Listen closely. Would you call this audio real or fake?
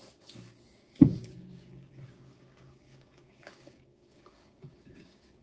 fake